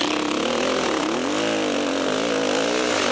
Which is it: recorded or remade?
recorded